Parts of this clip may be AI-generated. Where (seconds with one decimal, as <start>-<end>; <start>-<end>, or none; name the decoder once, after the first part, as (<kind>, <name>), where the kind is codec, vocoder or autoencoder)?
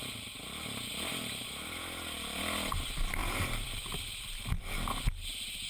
1.1-2.2 (vocoder, BigVGAN v2); 3.2-4.6